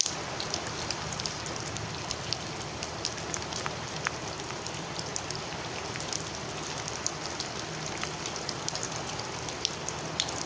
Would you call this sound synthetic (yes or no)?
no